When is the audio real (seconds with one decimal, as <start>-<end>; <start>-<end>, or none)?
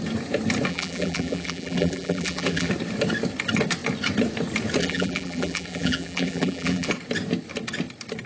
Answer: 0.0-0.7; 2.7-4.8; 6.9-8.3